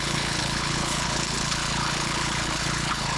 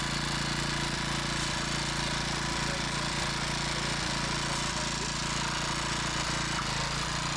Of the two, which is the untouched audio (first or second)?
second